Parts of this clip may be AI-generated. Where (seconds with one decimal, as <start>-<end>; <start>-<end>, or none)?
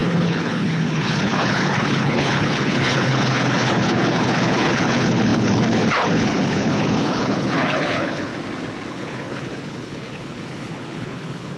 0.0-8.3; 8.9-11.6